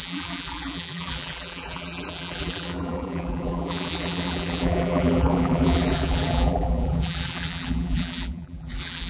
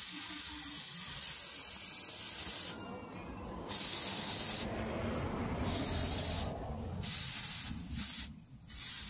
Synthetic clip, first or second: first